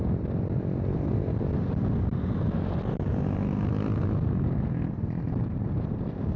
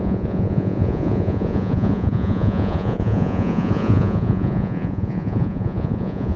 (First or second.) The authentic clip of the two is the first